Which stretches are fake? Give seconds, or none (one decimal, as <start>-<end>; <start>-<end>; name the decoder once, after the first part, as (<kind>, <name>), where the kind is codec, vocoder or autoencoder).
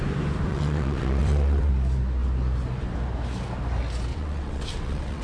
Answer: 0.5-1.7 (vocoder, WaveNeXt); 4.1-5.2